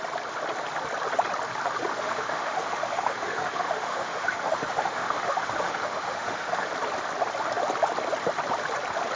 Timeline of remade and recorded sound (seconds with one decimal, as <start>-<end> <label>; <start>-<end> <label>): 0.0-1.9 recorded; 1.9-6.7 remade; 6.7-9.2 recorded

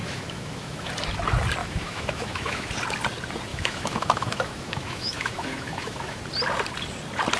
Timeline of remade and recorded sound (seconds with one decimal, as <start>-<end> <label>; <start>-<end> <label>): 0.0-0.9 remade; 0.9-1.6 recorded; 1.6-2.7 remade; 2.7-3.5 recorded; 3.5-6.2 remade; 6.2-7.4 recorded

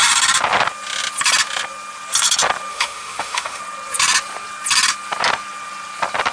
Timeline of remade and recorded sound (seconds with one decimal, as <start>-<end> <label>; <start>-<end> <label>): 0.0-2.7 recorded; 2.7-3.6 remade; 3.6-6.3 recorded

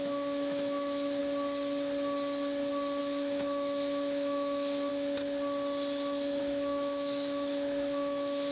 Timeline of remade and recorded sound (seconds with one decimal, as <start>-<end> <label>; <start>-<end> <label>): 0.0-1.2 remade; 1.2-3.0 recorded; 3.0-4.9 remade; 4.9-6.4 recorded; 6.4-8.5 remade

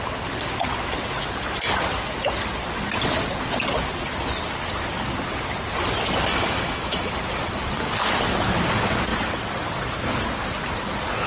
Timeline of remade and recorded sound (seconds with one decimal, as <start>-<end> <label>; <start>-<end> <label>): 0.0-6.3 recorded; 6.3-7.1 remade; 7.1-11.3 recorded